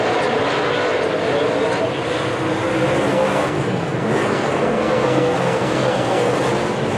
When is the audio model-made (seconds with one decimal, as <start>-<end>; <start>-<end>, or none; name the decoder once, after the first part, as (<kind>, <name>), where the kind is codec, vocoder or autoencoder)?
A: 3.1-6.3 (codec, SNAC)